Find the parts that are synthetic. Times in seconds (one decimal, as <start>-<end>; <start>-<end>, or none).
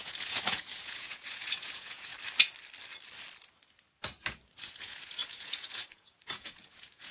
0.0-2.1; 4.6-7.1